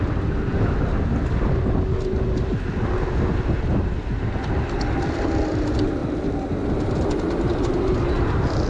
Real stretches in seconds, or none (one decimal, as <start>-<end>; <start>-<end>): 0.0-8.7